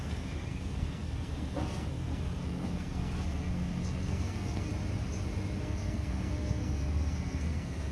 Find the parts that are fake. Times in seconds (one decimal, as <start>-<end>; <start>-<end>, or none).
0.0-4.7; 5.6-7.9